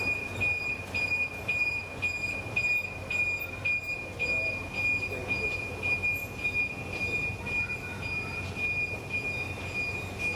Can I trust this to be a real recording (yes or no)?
yes